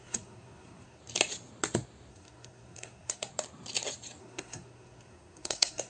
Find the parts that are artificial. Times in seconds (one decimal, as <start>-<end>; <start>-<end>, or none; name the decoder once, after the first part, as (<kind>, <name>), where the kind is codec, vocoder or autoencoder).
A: 0.0-1.0 (codec, SNAC); 2.1-3.3; 4.2-5.9